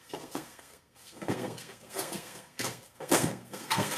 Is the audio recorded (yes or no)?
no